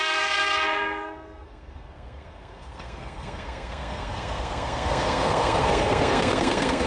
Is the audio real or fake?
fake